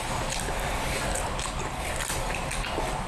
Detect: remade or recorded recorded